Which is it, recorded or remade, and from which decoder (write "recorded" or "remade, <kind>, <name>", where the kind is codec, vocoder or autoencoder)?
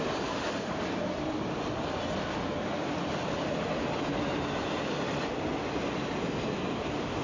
recorded